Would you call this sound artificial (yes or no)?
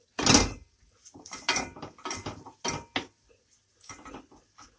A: no